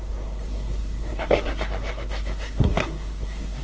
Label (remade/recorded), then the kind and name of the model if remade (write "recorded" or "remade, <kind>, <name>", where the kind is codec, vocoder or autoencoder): remade, codec, SNAC